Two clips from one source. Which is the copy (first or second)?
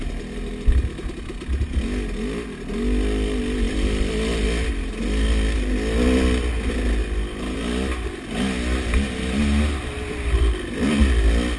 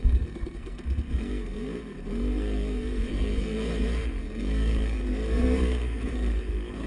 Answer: second